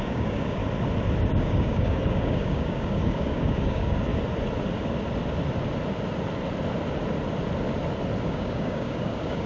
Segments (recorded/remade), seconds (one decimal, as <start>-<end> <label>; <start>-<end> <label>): 0.0-0.6 remade; 0.6-1.4 recorded; 1.4-4.1 remade; 4.1-8.2 recorded; 8.2-9.5 remade